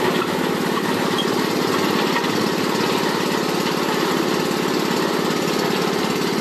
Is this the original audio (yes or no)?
yes